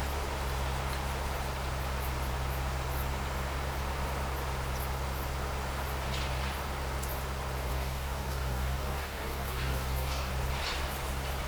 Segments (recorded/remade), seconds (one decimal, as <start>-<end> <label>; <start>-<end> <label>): 0.0-7.7 recorded; 7.7-10.3 remade; 10.3-11.5 recorded

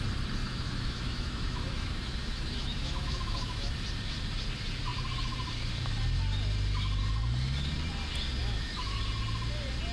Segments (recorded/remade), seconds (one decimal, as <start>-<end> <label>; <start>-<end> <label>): 0.0-0.4 recorded; 0.4-3.7 remade; 3.7-8.4 recorded; 8.4-9.0 remade; 9.0-9.9 recorded